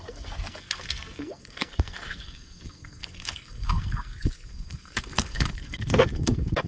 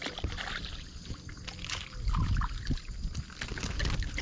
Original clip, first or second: second